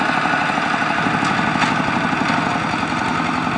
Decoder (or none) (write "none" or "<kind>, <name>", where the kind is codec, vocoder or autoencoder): none